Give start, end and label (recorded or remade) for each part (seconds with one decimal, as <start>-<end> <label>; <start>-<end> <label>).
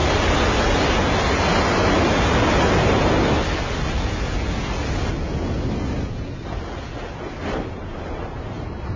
0.0-7.8 recorded; 7.8-9.0 remade